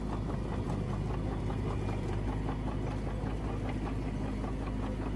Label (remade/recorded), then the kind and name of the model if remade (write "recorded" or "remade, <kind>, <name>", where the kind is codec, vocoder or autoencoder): recorded